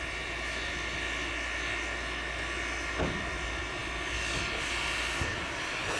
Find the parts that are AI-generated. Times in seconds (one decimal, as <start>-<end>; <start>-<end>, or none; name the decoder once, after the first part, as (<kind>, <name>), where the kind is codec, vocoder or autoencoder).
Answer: none